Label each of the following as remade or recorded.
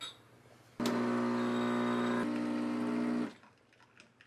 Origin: recorded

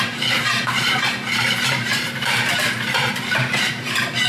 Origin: remade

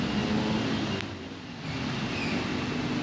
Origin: recorded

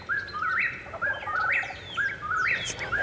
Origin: recorded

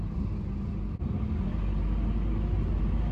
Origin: recorded